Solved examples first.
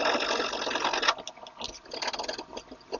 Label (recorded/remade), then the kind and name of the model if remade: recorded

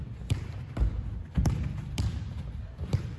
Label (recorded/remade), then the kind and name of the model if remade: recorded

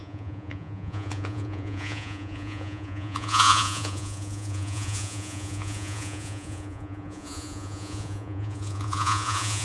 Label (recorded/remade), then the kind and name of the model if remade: remade, vocoder, Vocos